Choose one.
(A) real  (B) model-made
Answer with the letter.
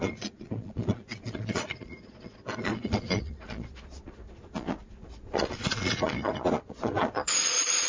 B